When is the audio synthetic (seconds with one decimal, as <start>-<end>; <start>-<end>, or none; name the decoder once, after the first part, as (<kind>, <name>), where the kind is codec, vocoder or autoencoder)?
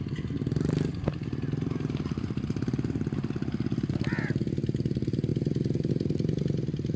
none